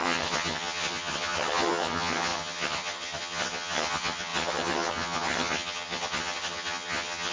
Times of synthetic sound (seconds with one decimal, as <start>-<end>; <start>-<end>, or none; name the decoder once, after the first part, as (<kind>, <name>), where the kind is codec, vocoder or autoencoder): 0.0-7.3 (vocoder, HiFi-GAN)